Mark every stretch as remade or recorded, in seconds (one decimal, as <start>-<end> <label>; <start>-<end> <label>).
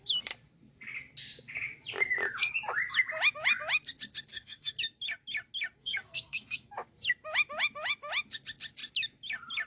0.0-4.3 recorded; 4.3-4.8 remade; 4.8-5.8 recorded; 5.8-6.7 remade; 6.7-9.7 recorded